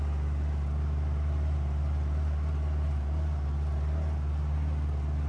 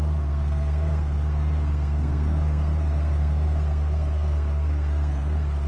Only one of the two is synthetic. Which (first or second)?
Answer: second